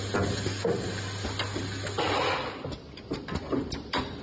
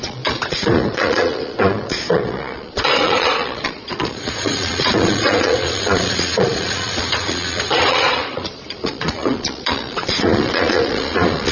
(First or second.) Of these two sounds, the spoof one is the second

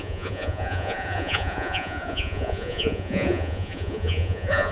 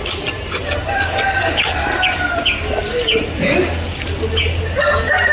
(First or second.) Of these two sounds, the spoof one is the first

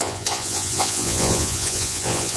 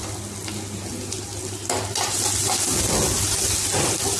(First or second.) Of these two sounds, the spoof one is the first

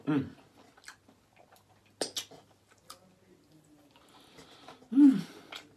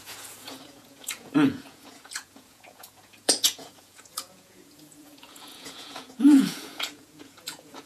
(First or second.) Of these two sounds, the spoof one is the second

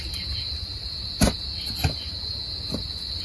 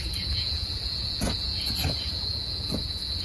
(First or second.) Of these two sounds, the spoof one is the second